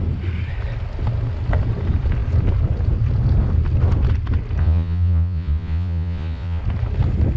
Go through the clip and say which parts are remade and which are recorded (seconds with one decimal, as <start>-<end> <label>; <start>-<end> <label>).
0.0-4.6 recorded; 4.6-6.6 remade; 6.6-7.4 recorded